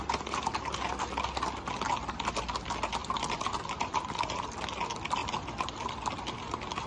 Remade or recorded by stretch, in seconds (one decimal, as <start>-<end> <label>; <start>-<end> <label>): 0.0-6.9 recorded